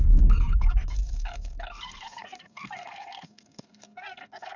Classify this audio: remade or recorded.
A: remade